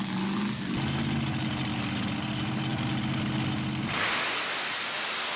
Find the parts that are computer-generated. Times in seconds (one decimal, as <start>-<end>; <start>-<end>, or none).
none